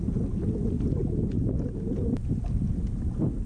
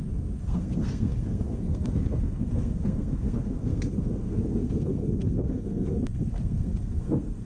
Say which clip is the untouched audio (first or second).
first